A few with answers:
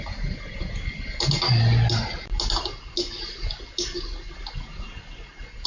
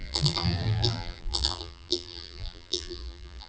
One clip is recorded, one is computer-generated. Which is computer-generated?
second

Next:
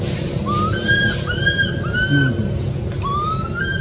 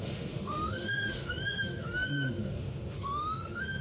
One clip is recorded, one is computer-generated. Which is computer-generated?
second